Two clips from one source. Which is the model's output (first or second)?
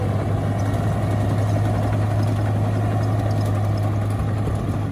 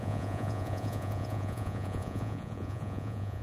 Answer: second